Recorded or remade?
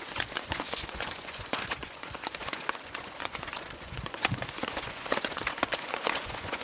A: remade